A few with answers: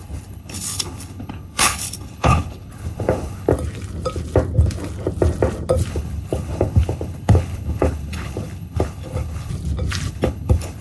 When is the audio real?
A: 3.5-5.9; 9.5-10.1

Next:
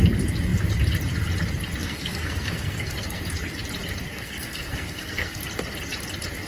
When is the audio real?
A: 0.0-1.8; 3.2-4.1; 5.4-6.5

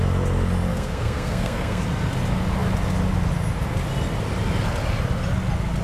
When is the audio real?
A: 0.0-0.7; 1.8-5.8

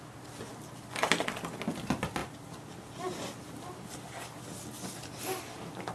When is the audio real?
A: 0.0-5.9

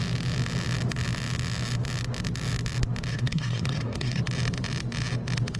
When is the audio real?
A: 0.0-3.1; 4.2-5.6

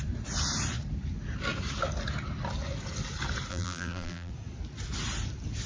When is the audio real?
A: 0.0-3.5; 4.3-5.7